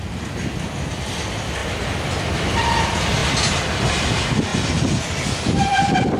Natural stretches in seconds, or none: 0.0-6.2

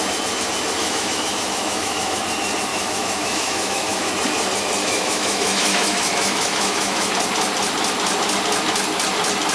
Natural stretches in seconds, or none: 0.0-0.8; 2.2-2.7; 4.1-4.8; 7.1-9.5